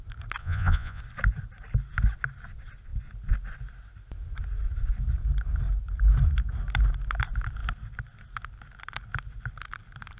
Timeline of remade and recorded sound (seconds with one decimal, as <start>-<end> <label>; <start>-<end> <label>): 0.0-0.4 recorded; 0.4-1.0 remade; 1.0-10.2 recorded